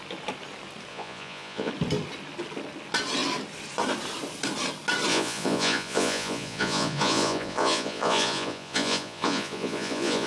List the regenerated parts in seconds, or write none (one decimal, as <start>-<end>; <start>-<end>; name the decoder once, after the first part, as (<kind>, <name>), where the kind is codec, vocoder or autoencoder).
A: 0.9-1.7 (vocoder, Vocos); 5.1-10.3